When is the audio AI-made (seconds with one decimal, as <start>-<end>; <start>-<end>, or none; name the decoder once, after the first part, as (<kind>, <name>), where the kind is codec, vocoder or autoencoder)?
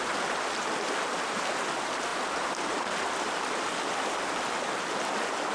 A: none